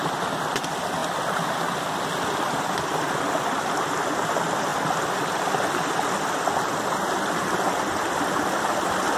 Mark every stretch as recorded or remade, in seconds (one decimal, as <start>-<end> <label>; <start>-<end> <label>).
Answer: 0.0-9.2 recorded